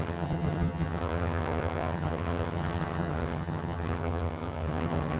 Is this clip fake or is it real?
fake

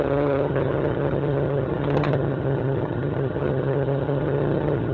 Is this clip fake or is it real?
fake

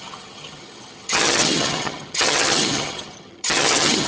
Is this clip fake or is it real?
fake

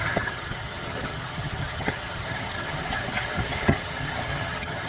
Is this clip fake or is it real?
fake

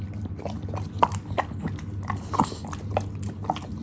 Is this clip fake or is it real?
real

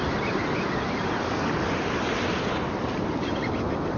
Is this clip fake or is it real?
real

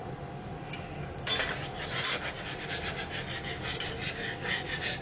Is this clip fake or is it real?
real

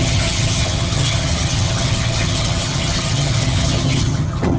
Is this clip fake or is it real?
fake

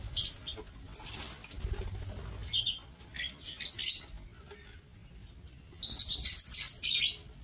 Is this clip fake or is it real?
real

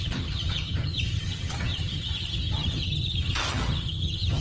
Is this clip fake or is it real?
fake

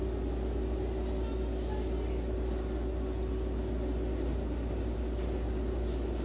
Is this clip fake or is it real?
real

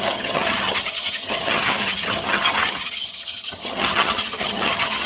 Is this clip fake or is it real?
fake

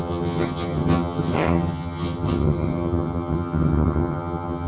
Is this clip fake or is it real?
fake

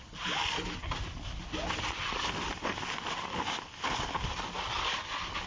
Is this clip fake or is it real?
real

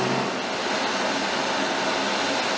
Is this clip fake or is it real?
real